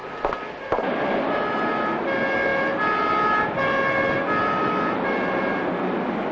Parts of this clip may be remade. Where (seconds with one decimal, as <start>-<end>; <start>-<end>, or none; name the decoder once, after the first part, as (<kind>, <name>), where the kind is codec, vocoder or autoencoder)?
none